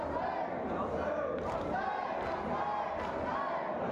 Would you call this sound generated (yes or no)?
no